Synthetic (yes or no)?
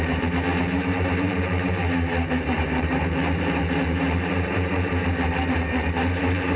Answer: yes